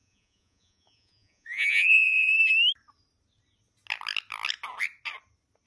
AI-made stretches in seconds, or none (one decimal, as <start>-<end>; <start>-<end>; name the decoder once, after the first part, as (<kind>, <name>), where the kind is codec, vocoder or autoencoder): 0.0-2.3 (vocoder, Vocos)